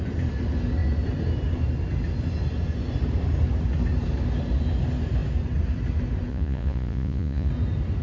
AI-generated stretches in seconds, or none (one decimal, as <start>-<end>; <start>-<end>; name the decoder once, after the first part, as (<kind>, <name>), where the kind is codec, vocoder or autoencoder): 6.3-7.5 (vocoder, Vocos)